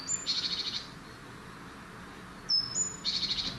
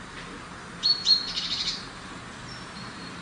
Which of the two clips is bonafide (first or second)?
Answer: first